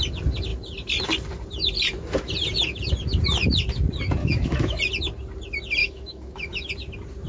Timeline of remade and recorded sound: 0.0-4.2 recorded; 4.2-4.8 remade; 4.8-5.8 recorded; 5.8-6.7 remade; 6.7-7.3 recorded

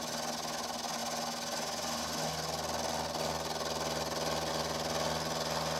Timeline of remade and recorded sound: 0.0-5.8 recorded

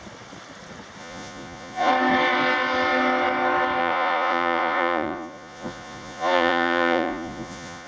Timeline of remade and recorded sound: 0.0-1.0 recorded; 1.0-1.9 remade; 1.9-3.8 recorded; 3.8-7.9 remade

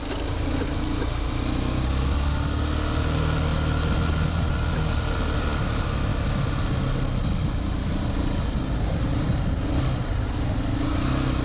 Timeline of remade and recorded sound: 0.0-11.4 recorded

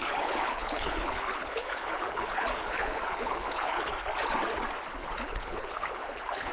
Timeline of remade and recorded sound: 0.0-3.9 remade; 3.9-4.9 recorded; 4.9-6.5 remade